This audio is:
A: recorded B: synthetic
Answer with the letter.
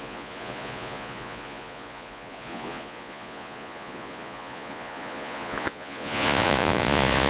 B